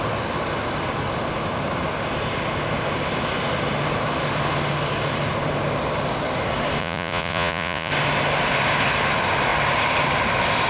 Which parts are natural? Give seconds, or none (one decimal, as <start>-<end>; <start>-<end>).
0.0-6.8; 7.9-10.7

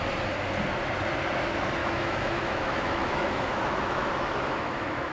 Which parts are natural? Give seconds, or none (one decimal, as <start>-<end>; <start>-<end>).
0.0-1.8

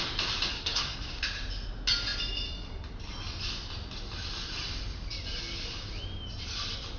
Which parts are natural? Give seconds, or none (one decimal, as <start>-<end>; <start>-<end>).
0.0-0.5; 1.2-7.0

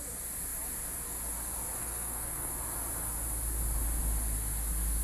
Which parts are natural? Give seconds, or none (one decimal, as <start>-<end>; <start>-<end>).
0.0-1.8; 2.5-5.0

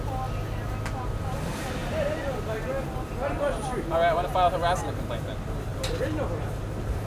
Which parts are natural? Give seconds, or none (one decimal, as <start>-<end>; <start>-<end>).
0.0-5.7; 6.4-7.1

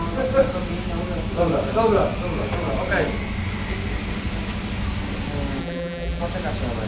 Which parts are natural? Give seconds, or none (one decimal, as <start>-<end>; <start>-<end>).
0.0-5.6; 6.2-6.9

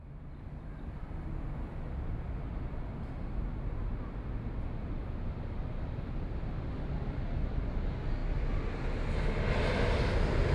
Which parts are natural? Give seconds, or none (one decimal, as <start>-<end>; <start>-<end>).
0.0-10.5